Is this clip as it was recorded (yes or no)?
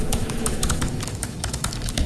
no